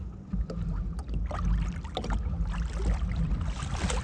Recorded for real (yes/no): yes